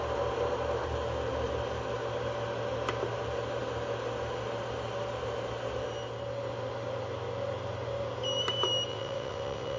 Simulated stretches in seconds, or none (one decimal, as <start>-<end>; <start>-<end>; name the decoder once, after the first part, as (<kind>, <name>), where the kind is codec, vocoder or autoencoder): 8.9-9.8 (vocoder, WaveNeXt)

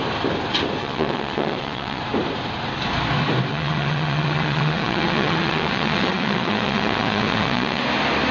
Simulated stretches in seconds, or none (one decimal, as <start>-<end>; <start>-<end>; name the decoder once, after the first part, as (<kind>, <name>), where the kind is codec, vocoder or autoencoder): 0.8-2.0 (vocoder, WaveNeXt); 3.5-7.8

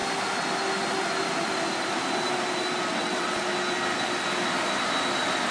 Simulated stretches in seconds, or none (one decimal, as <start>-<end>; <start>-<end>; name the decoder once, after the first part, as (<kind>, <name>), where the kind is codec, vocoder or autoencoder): 2.9-3.4 (vocoder, WaveNeXt)

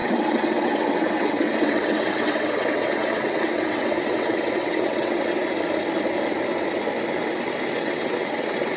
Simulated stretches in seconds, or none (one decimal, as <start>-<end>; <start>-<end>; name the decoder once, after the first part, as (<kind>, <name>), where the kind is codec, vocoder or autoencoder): 0.0-5.4 (vocoder, WaveNeXt); 7.7-8.8

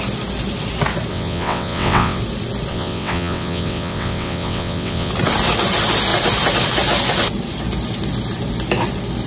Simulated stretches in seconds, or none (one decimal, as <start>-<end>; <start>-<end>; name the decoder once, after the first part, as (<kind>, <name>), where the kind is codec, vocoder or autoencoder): 1.1-2.2 (vocoder, WaveNeXt); 2.7-5.1

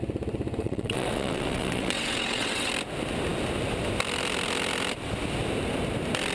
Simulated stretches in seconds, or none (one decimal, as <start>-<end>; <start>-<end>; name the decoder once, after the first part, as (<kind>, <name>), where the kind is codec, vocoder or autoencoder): 0.6-2.7 (vocoder, WaveNeXt)

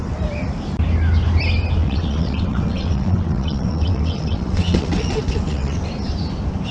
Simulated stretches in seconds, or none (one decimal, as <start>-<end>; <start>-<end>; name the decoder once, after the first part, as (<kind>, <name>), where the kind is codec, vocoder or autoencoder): 1.8-5.8 (vocoder, WaveNeXt)